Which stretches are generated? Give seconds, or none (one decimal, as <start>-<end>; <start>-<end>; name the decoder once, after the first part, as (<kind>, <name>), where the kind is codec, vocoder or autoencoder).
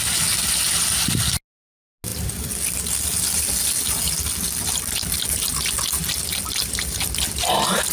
none